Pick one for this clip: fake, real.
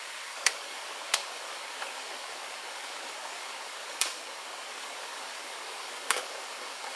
fake